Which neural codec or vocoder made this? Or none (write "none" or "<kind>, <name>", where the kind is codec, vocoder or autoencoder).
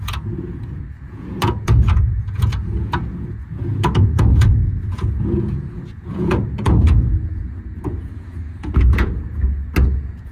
vocoder, Vocos